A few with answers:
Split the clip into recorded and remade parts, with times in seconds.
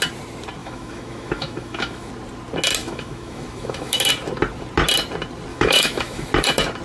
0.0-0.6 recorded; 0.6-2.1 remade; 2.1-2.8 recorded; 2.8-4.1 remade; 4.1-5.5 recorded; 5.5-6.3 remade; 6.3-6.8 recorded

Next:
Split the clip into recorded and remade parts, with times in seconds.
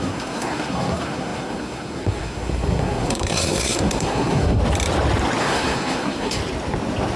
0.0-4.6 remade; 4.6-5.4 recorded; 5.4-6.4 remade; 6.4-7.2 recorded